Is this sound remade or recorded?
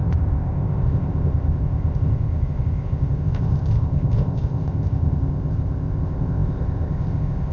remade